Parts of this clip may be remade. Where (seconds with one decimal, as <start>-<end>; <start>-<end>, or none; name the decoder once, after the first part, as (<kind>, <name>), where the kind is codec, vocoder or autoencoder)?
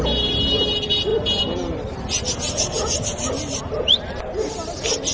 none